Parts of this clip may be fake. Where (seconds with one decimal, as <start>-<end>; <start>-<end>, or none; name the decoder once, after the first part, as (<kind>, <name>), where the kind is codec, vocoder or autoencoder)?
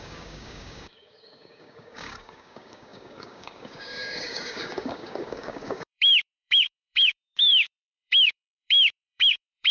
0.0-9.7 (codec, DAC)